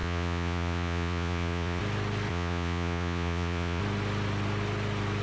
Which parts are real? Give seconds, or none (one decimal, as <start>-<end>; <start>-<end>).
1.8-2.3; 3.8-5.2